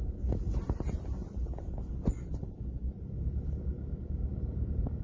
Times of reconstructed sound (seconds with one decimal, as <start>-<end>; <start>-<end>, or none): none